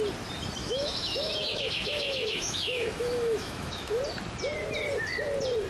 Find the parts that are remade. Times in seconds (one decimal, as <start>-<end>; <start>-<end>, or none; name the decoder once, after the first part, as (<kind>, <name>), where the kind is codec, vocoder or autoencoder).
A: 0.6-4.0 (autoencoder, DAC-VAE)